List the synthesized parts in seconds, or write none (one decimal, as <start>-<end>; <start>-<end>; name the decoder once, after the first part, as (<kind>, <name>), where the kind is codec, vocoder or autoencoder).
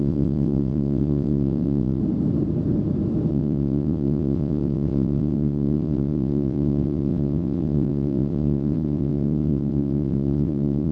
0.0-2.0 (vocoder, WaveNeXt); 3.3-10.9